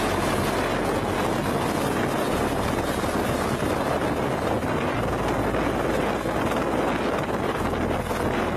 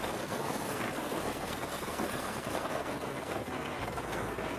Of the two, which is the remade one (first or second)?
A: second